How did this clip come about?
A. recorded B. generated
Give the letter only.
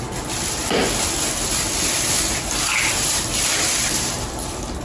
A